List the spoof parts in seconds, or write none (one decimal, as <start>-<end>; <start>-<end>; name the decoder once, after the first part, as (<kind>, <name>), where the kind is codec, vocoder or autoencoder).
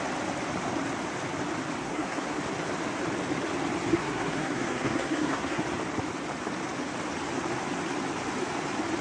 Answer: 1.8-2.4 (codec, SNAC); 3.9-5.6